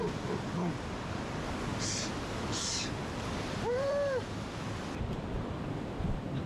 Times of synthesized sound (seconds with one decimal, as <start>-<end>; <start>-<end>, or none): 0.0-6.5